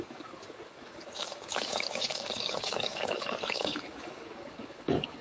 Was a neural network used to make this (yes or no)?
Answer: yes